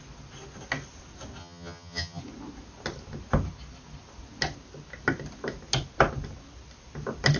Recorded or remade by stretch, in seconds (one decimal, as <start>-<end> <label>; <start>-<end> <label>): 0.0-1.4 recorded; 1.4-2.2 remade; 2.2-7.4 recorded

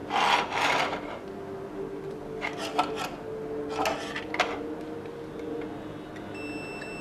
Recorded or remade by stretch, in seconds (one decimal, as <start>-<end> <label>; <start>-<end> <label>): 0.0-7.0 recorded

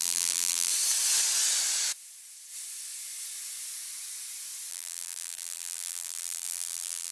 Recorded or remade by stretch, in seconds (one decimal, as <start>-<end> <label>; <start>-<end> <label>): 0.0-0.7 remade; 0.7-4.7 recorded; 4.7-7.1 remade

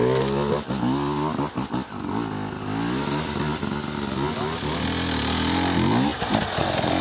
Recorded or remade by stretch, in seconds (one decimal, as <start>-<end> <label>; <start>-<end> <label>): 0.0-7.0 recorded

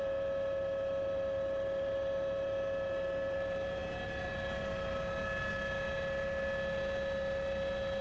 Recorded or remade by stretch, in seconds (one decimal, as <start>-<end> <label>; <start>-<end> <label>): 0.0-8.0 recorded

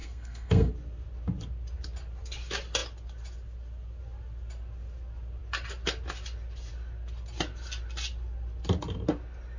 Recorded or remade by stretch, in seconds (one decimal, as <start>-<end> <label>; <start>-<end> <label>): 0.0-0.7 remade; 0.7-9.6 recorded